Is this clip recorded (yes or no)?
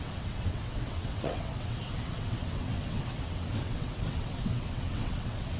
no